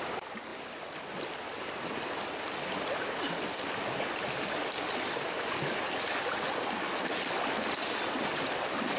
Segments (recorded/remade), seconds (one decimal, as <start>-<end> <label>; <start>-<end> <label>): 0.0-9.0 recorded